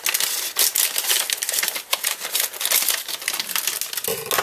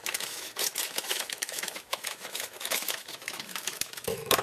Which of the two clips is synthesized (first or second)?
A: second